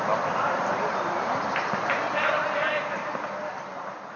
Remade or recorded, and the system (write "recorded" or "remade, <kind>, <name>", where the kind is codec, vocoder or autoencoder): recorded